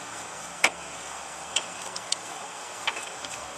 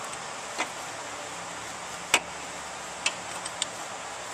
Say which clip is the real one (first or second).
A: second